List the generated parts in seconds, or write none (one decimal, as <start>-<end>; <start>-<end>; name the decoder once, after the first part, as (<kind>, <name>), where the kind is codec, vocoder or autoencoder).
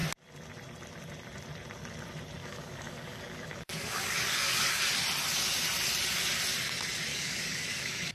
2.4-4.8 (codec, DAC); 7.1-8.1